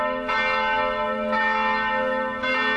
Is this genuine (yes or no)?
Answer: yes